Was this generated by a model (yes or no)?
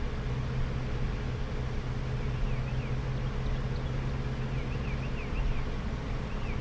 no